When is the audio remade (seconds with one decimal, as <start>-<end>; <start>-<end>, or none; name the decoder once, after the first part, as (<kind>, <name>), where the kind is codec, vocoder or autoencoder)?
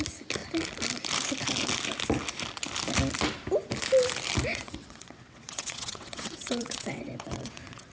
4.5-7.9 (vocoder, WaveNeXt)